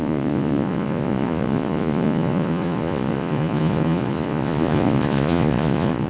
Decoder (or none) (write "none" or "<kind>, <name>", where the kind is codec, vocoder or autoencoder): vocoder, Vocos